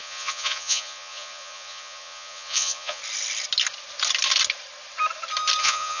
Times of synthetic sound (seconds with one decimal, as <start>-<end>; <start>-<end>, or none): 0.0-3.0; 5.6-6.0